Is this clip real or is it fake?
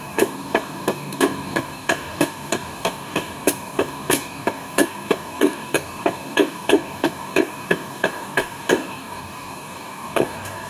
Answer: fake